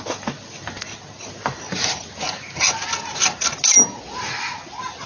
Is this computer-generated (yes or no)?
no